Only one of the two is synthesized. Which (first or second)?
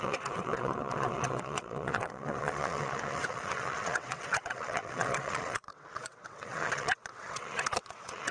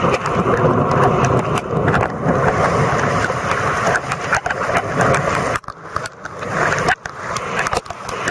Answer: first